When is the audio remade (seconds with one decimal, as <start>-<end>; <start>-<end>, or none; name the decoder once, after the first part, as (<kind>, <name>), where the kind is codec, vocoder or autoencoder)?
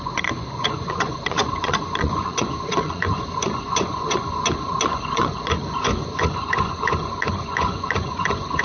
0.0-8.6 (vocoder, Vocos)